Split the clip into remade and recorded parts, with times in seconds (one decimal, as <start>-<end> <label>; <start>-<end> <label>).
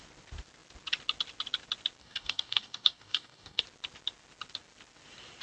0.0-2.0 recorded; 2.0-3.6 remade; 3.6-5.4 recorded